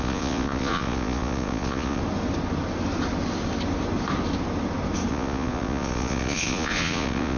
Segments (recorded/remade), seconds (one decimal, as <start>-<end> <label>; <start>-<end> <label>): 0.0-2.0 remade; 2.0-5.1 recorded; 5.1-7.4 remade